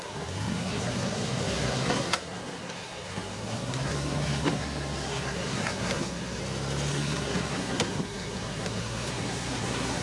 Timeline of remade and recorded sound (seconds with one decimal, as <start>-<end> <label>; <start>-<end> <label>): 0.0-6.4 remade; 6.4-6.9 recorded; 6.9-10.0 remade